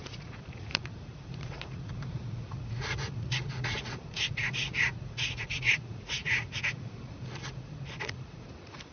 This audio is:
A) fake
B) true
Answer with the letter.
A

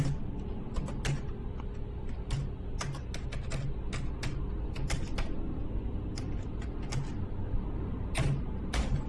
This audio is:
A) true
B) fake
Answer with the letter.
A